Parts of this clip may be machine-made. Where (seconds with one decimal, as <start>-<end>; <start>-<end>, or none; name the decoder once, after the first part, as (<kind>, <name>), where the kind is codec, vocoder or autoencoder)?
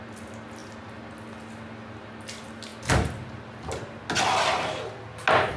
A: none